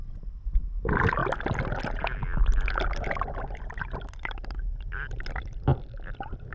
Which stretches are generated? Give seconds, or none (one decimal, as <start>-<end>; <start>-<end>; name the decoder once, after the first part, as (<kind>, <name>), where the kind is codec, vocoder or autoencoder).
none